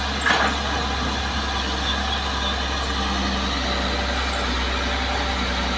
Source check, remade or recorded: recorded